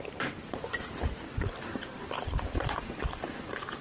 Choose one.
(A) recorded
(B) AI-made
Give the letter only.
A